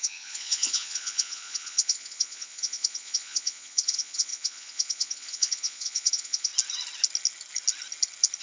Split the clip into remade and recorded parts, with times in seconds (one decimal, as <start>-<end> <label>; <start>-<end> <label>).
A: 0.0-6.5 remade; 6.5-8.4 recorded